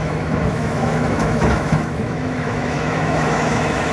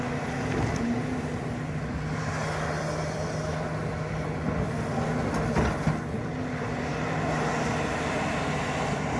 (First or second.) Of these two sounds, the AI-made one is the first